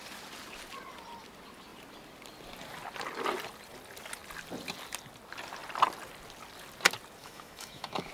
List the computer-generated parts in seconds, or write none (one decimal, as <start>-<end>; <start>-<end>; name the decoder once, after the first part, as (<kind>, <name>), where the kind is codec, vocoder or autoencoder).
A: 7.2-8.1 (autoencoder, DAC-VAE)